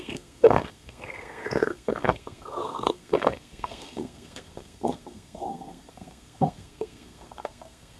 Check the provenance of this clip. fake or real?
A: fake